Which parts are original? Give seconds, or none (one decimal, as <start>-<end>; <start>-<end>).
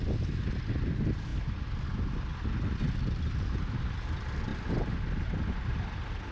0.0-6.3